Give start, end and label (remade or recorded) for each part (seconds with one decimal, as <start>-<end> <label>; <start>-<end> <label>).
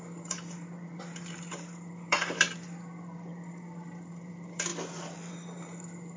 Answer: 0.0-4.7 remade; 4.7-5.3 recorded; 5.3-6.2 remade